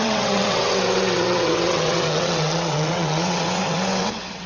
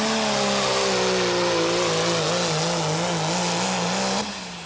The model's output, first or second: first